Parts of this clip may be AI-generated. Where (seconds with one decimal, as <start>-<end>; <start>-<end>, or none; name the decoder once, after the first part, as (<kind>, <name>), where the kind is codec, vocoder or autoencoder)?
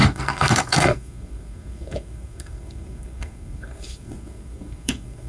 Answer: 0.0-5.3 (codec, SNAC)